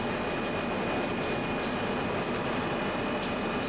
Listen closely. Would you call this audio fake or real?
real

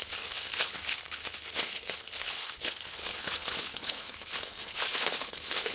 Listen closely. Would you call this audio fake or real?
fake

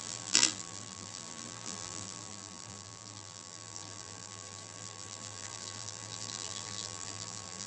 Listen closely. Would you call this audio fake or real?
fake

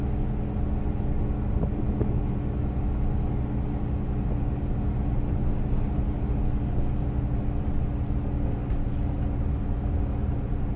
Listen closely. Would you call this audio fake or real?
real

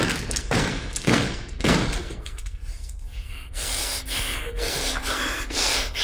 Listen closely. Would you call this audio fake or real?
fake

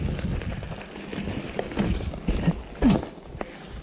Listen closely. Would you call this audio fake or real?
real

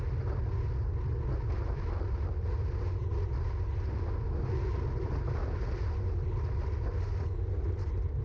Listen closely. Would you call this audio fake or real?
real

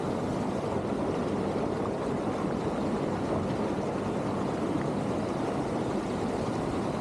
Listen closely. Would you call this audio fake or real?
real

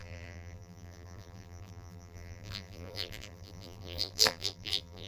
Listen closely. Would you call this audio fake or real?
fake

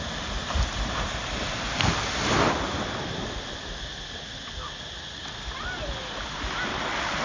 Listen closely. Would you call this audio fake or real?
real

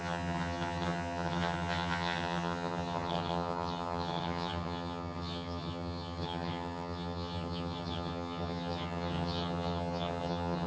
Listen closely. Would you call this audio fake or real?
fake